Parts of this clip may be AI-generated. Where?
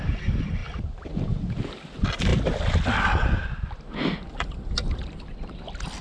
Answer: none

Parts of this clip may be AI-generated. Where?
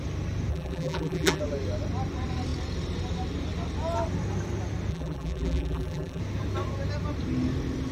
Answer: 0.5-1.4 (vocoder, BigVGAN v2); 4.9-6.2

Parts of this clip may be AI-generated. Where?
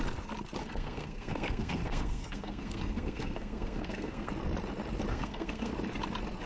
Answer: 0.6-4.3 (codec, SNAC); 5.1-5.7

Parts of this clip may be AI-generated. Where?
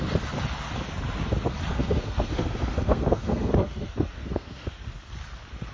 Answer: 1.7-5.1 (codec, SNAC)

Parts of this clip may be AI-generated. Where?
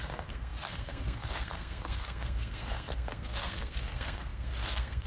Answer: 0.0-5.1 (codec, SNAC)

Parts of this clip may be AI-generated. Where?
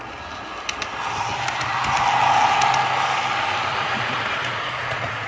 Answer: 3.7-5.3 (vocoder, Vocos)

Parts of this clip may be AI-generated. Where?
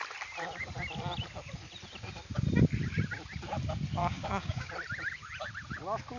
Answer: 4.0-4.7 (codec, DAC)